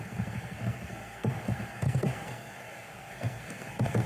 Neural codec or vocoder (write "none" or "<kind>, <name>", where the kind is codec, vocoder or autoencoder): codec, SNAC